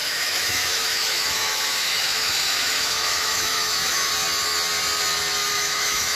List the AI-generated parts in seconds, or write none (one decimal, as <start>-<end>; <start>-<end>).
0.0-4.1; 5.5-6.1